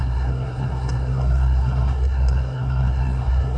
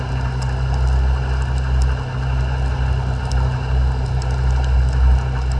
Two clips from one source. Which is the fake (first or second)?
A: first